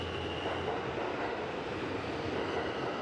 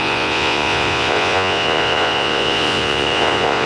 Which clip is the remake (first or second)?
second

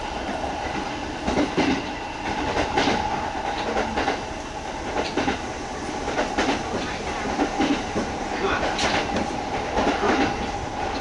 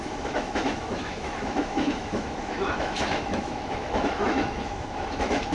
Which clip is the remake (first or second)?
second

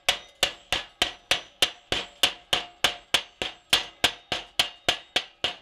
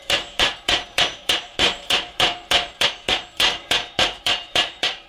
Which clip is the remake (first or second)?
second